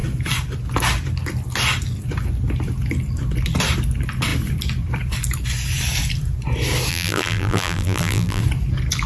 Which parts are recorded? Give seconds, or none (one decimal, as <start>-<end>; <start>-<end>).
0.0-6.9; 8.4-9.1